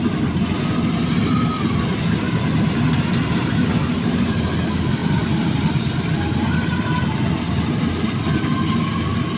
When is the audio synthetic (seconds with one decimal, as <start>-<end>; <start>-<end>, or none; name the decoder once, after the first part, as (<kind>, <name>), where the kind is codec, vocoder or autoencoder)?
none